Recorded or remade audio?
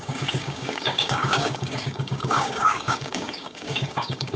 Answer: remade